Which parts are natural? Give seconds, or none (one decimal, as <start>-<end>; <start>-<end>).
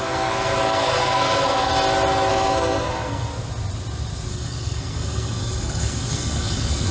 1.7-2.3; 3.3-4.3